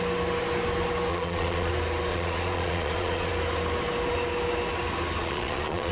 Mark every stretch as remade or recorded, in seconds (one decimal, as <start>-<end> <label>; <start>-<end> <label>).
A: 0.0-1.1 recorded; 1.1-1.7 remade; 1.7-2.1 recorded; 2.1-3.3 remade; 3.3-5.2 recorded; 5.2-5.9 remade